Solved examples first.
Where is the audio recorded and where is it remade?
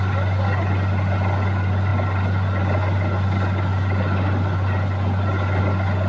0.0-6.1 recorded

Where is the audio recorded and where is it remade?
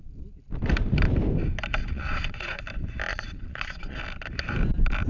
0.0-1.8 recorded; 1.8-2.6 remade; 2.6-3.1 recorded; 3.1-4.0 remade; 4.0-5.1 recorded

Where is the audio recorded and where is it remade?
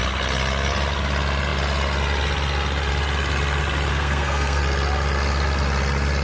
0.0-3.9 recorded; 3.9-4.6 remade; 4.6-6.2 recorded